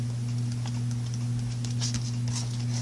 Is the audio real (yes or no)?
yes